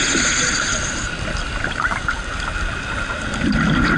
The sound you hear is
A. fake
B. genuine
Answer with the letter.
B